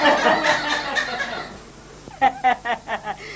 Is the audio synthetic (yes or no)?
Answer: yes